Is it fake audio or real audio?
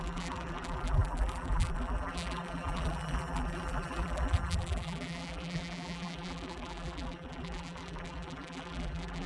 fake